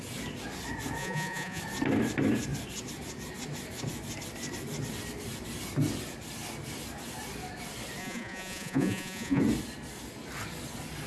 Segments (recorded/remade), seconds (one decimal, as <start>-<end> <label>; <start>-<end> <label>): 0.0-1.0 recorded; 1.0-1.6 remade; 1.6-8.0 recorded; 8.0-9.4 remade; 9.4-11.1 recorded